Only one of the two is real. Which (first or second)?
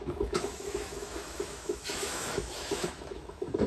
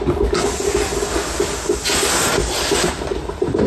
second